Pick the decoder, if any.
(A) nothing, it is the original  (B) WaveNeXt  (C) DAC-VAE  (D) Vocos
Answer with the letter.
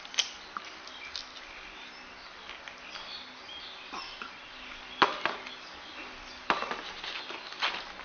A